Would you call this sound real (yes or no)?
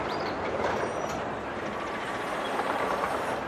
no